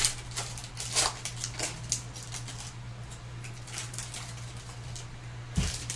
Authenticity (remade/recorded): recorded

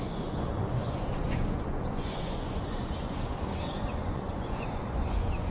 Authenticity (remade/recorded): remade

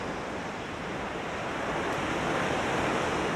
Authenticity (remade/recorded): recorded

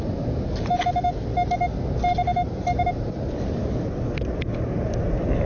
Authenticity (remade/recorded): recorded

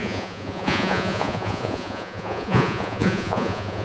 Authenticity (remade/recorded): remade